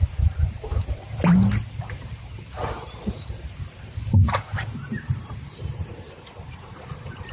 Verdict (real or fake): fake